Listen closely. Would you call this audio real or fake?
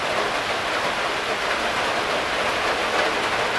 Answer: real